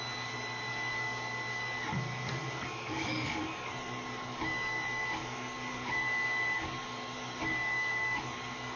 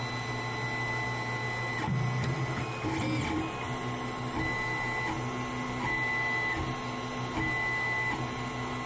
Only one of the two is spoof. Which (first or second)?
first